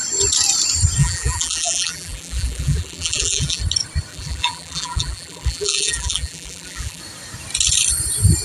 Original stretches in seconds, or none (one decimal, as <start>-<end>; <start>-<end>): 0.0-1.0; 3.6-4.1; 7.0-8.4